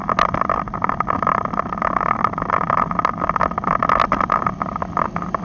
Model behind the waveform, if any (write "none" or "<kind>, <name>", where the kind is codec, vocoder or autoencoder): none